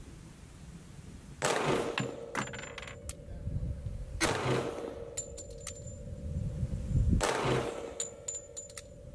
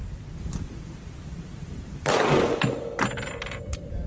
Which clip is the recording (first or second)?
first